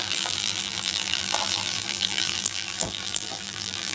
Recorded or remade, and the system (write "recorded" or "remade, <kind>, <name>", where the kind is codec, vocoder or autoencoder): remade, vocoder, BigVGAN v2